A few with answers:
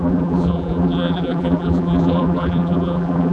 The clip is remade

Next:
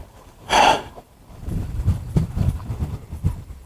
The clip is remade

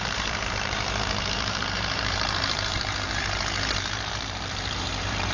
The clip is remade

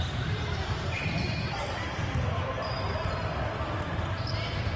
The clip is remade